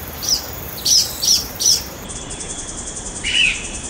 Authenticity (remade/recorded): remade